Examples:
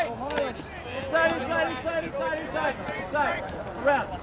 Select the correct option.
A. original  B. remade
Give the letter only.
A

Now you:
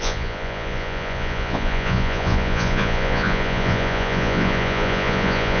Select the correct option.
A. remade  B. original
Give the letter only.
A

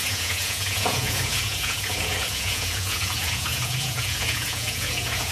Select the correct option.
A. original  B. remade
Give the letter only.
B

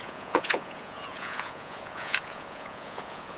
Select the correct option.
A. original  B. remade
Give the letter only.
B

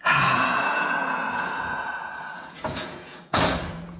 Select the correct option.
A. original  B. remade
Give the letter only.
B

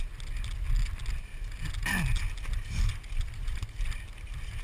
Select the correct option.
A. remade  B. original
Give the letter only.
B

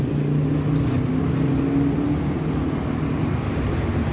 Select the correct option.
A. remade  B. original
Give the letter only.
B